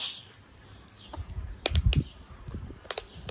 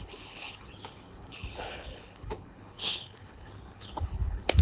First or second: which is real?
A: first